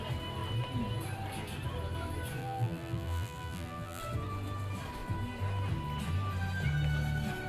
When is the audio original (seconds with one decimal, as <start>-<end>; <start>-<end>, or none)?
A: 0.0-2.4; 4.0-7.5